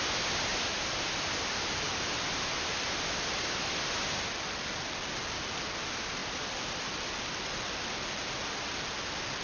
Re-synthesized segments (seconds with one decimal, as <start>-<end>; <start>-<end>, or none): 0.5-2.1; 6.2-7.4